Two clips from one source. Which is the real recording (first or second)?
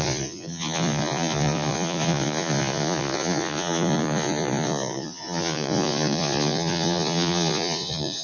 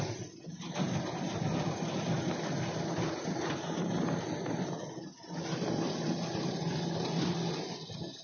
second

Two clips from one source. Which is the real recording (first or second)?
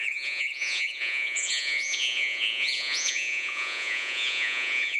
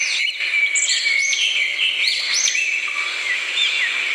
second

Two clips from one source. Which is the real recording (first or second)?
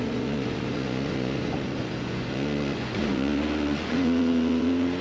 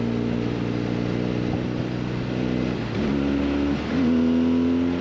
second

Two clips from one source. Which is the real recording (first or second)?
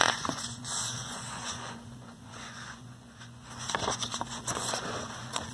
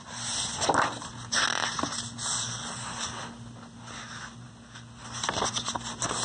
second